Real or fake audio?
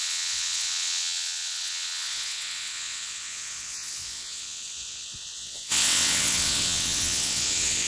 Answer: fake